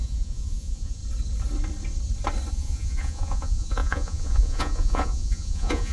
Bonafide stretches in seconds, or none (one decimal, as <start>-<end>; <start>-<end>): 1.0-2.5